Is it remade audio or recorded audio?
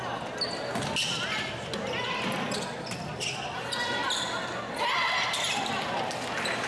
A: recorded